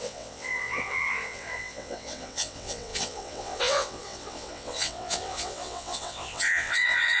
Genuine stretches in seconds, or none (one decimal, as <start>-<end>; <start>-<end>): none